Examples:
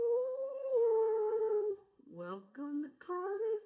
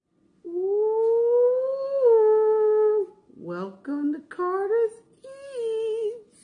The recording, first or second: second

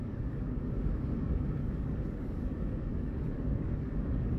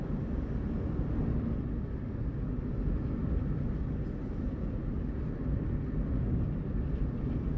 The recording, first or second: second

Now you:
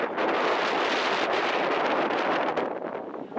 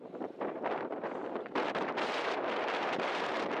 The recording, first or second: first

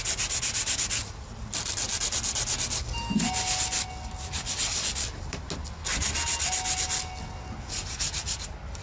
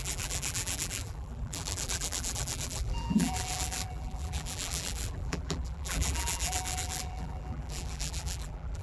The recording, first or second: first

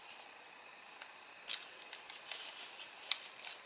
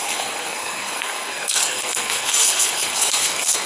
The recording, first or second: first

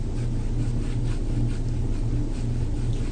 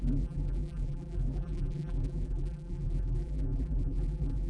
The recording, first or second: first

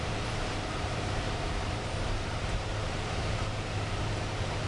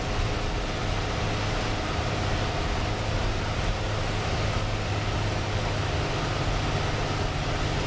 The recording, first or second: second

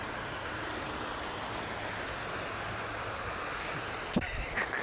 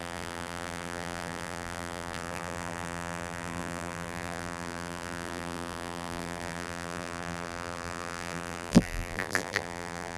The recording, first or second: first